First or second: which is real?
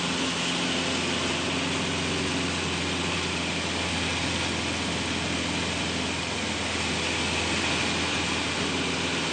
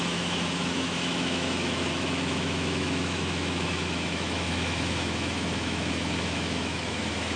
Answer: first